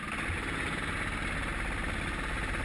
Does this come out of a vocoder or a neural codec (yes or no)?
no